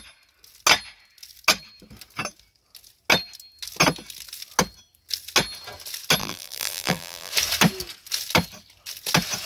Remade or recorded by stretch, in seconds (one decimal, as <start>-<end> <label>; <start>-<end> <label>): 0.0-6.2 recorded; 6.2-7.3 remade; 7.3-9.5 recorded